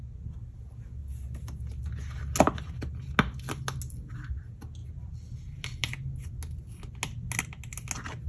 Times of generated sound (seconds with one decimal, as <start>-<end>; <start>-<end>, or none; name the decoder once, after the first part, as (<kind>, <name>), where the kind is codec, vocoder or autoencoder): none